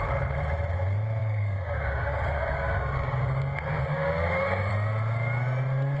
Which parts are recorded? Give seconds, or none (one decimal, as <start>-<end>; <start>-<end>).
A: 0.0-1.2; 4.7-6.0